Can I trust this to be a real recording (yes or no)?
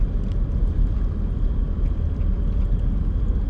yes